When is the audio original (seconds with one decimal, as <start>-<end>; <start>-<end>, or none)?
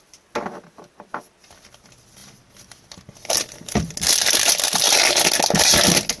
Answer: 0.0-6.2